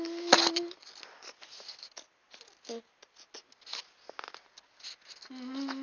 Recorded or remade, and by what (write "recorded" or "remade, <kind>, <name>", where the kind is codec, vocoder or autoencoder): recorded